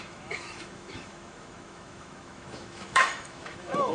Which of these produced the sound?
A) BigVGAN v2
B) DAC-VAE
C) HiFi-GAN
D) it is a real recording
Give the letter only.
B